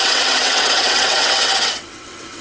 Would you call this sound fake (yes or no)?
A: yes